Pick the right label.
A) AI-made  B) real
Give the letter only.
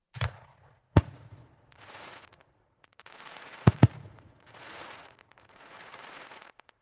A